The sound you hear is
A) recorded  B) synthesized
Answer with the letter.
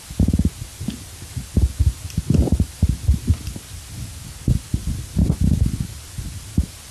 A